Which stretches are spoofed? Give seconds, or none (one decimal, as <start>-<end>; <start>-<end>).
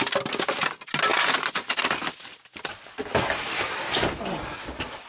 none